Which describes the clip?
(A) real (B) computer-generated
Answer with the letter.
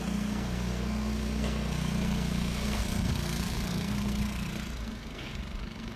B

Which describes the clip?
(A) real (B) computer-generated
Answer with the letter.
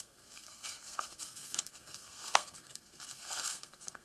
B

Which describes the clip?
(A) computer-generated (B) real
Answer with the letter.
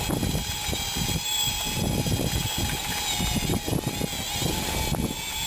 B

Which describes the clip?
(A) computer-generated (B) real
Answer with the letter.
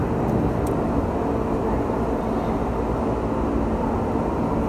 B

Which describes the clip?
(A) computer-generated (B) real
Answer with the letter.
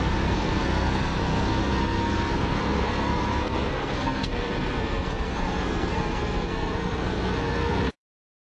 A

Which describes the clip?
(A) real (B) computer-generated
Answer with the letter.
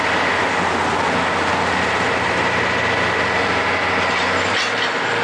A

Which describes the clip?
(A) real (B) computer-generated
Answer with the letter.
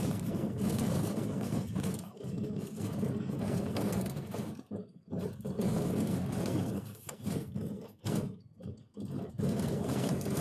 B